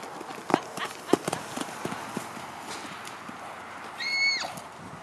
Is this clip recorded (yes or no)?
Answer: yes